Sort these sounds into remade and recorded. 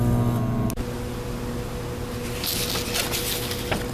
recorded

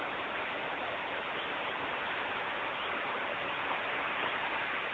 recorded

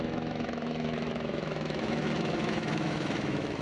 remade